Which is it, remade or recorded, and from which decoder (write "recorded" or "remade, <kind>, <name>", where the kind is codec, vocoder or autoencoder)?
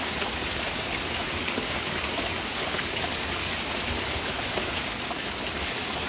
remade, codec, DAC